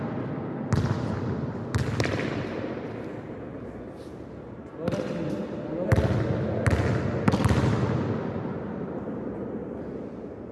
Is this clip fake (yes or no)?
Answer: no